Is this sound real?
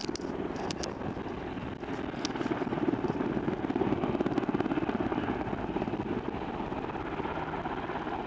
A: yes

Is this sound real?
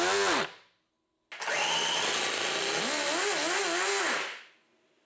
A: yes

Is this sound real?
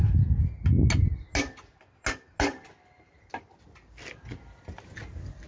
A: yes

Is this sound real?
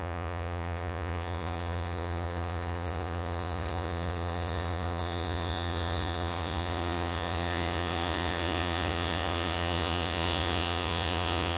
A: no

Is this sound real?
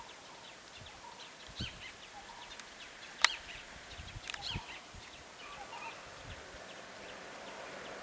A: yes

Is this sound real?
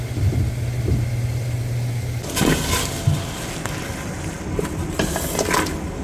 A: yes